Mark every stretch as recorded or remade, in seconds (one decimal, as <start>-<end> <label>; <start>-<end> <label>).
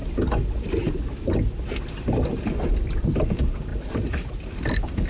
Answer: 0.0-5.1 recorded